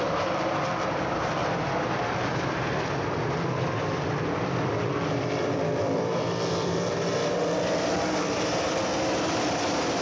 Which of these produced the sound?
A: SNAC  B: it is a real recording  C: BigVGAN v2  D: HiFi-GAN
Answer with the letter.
C